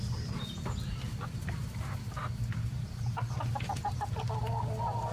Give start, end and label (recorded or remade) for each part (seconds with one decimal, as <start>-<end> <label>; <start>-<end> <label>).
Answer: 0.0-1.6 recorded; 1.6-4.2 remade; 4.2-5.1 recorded